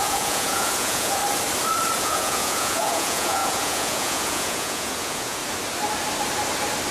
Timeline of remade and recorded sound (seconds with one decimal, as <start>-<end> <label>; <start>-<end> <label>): 0.0-1.2 remade; 1.2-2.0 recorded; 2.0-5.4 remade; 5.4-6.9 recorded

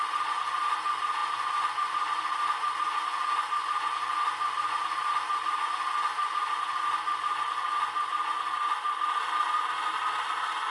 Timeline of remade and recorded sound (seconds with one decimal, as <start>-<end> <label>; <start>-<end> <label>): 0.0-10.7 recorded

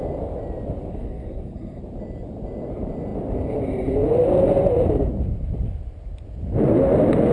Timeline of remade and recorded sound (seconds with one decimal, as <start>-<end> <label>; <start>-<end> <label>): 0.0-0.9 recorded; 0.9-1.8 remade; 1.8-7.3 recorded

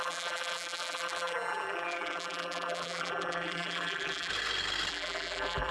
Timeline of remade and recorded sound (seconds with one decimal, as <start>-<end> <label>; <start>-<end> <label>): 0.0-4.3 remade; 4.3-4.9 recorded; 4.9-5.7 remade

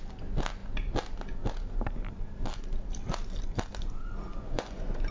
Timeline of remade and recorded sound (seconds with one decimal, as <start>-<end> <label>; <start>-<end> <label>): 0.0-4.3 recorded; 4.3-5.1 remade

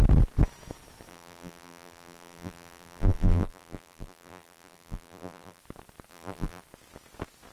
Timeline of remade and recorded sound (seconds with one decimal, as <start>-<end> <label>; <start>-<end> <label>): 0.0-1.1 recorded; 1.1-5.6 remade; 5.6-6.1 recorded; 6.1-6.6 remade; 6.6-7.5 recorded

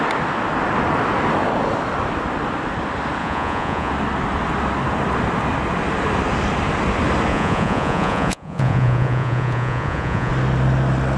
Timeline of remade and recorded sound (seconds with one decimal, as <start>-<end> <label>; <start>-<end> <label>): 0.0-3.2 recorded; 3.2-3.9 remade; 3.9-7.3 recorded; 7.3-10.3 remade; 10.3-11.2 recorded